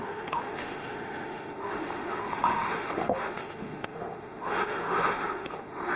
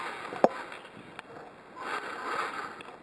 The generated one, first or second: first